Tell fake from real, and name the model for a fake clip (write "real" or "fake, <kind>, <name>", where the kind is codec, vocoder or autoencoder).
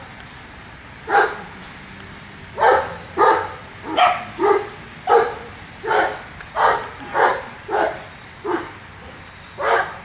real